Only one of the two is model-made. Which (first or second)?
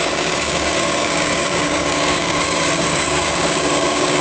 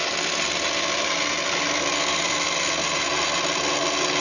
first